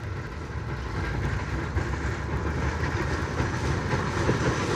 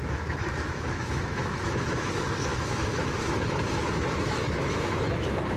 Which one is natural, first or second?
first